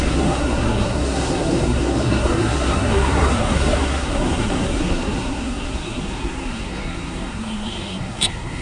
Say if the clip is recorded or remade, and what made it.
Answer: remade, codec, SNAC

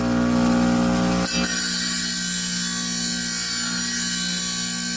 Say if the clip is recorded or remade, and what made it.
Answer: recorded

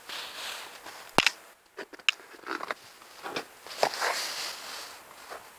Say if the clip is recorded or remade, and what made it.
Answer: recorded